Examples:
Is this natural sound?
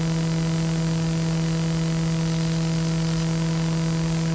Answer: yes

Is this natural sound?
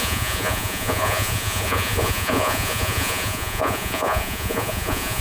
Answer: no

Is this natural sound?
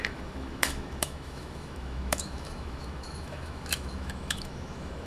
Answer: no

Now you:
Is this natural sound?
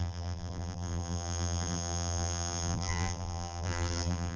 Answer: no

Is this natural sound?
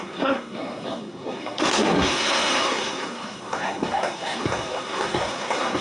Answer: no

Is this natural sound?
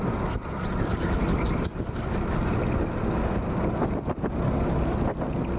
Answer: yes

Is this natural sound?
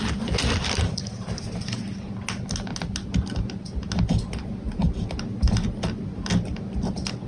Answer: yes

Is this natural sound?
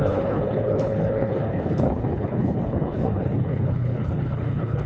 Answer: no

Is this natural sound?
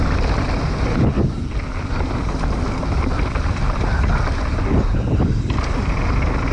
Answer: yes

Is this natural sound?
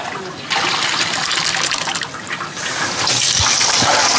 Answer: yes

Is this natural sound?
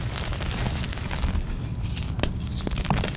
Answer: yes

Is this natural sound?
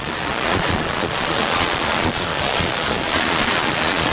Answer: no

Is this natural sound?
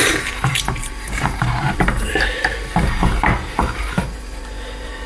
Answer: no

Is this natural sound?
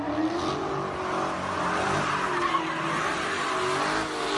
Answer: yes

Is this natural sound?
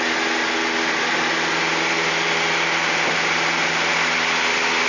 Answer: yes